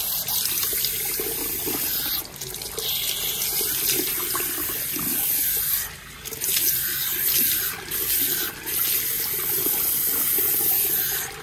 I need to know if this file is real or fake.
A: real